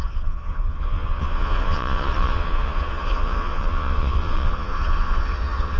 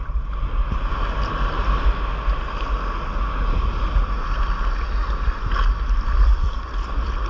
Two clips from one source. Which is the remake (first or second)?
first